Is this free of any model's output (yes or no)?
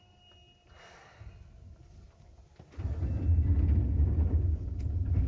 yes